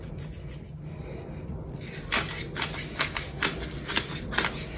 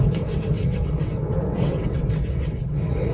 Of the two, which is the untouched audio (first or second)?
first